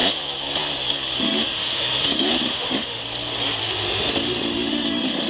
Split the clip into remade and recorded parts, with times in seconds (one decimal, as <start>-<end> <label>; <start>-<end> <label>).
0.0-1.2 recorded; 1.2-3.0 remade; 3.0-3.6 recorded; 3.6-5.3 remade